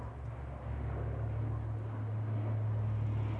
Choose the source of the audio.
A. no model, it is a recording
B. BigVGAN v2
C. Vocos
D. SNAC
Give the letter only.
A